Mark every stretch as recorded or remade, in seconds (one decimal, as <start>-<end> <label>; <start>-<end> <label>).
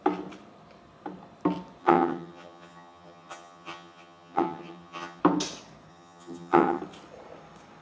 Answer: 0.0-1.8 recorded; 1.8-5.2 remade; 5.2-5.9 recorded; 5.9-6.8 remade; 6.8-7.8 recorded